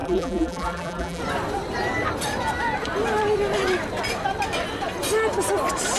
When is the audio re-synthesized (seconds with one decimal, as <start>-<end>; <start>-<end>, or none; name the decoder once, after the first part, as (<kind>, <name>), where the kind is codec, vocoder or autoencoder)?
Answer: 0.0-1.2 (vocoder, BigVGAN v2)